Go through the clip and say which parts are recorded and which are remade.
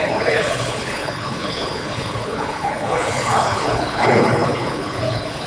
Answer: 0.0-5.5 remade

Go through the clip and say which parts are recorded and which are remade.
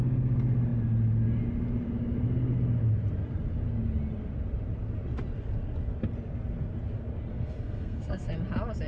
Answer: 0.0-7.3 recorded; 7.3-8.3 remade; 8.3-8.9 recorded